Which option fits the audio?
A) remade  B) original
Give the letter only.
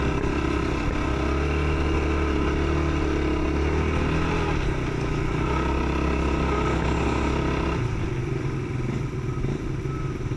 B